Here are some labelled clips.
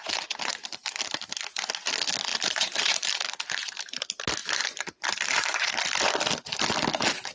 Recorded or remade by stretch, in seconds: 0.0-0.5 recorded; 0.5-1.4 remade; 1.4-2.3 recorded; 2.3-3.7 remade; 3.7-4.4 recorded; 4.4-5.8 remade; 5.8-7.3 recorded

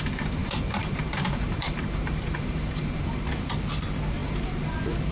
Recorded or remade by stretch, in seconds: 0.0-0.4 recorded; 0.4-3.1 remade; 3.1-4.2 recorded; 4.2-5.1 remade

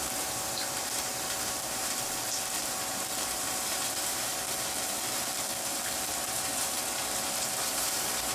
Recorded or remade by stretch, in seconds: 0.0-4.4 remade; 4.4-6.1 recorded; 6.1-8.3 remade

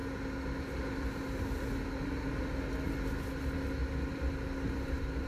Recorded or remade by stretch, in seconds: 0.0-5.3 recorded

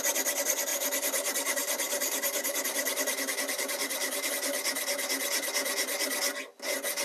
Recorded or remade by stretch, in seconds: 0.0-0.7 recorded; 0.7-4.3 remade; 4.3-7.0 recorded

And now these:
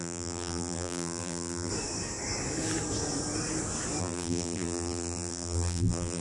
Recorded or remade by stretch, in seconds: 0.0-1.7 remade; 1.7-4.0 recorded; 4.0-6.2 remade